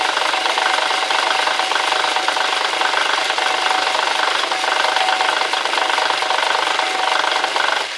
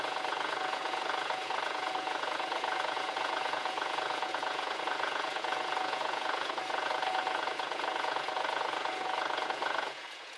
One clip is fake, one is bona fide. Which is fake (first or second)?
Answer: second